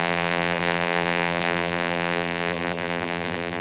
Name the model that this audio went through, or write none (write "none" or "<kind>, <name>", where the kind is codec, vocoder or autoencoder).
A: vocoder, BigVGAN v2